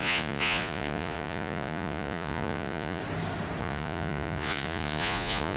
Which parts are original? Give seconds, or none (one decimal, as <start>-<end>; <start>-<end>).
3.0-3.6